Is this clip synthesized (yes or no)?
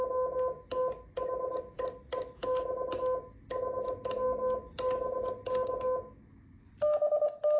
no